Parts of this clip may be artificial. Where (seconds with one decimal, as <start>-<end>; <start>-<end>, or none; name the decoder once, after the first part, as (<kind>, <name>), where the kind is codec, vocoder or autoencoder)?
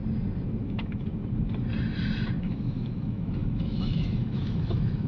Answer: 0.6-1.1 (autoencoder, DAC-VAE); 2.4-5.1